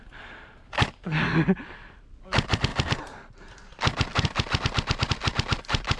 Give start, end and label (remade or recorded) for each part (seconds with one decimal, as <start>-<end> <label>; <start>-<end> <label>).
0.0-6.0 recorded